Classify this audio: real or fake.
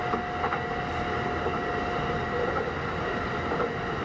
real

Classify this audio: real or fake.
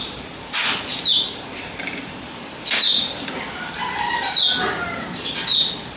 real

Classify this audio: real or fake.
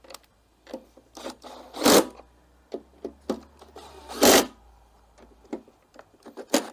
real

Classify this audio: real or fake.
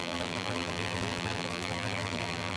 fake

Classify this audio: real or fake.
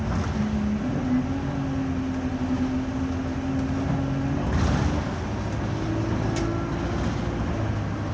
real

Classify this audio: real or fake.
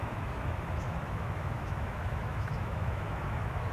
fake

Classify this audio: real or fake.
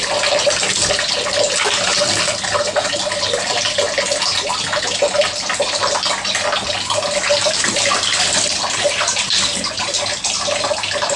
real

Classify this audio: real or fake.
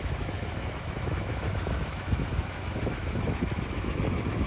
fake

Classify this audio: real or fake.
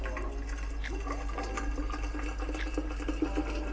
real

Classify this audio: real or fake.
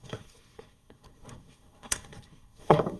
fake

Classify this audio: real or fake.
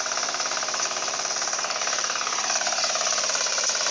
fake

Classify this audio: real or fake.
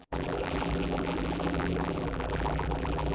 fake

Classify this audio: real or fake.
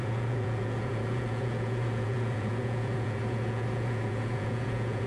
fake